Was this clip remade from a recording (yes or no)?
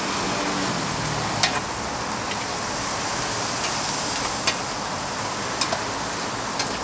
no